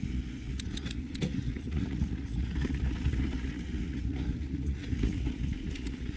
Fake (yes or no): yes